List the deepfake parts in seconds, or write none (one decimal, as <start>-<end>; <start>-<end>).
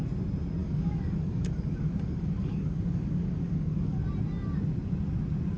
0.6-4.0